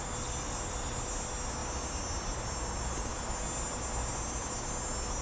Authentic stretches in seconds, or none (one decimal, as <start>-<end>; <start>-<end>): 0.0-5.2